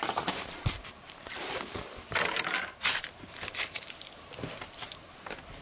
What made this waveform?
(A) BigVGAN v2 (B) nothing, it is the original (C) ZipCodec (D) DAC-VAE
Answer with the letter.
A